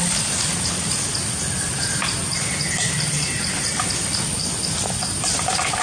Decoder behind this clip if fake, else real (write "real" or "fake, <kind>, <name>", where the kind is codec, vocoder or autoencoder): real